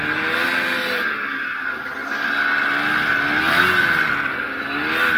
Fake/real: real